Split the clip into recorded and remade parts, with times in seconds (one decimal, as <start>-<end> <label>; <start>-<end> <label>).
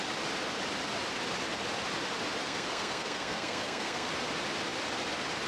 0.0-2.4 recorded; 2.4-4.1 remade; 4.1-5.5 recorded